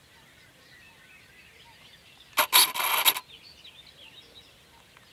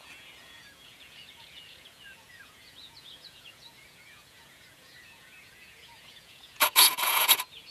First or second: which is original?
first